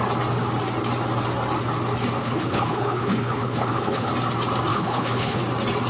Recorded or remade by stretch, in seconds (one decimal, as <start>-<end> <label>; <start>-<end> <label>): 0.0-2.2 recorded; 2.2-4.1 remade; 4.1-4.7 recorded; 4.7-5.4 remade; 5.4-5.9 recorded